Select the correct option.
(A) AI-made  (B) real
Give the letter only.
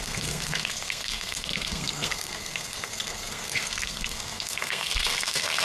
A